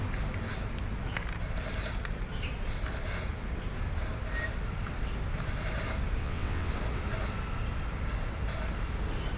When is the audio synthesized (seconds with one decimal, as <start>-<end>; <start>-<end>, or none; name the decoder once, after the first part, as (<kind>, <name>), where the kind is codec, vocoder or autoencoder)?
6.2-6.7 (vocoder, WaveNeXt)